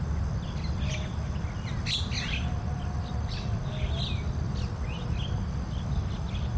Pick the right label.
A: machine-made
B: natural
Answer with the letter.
B